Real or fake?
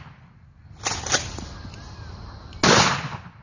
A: real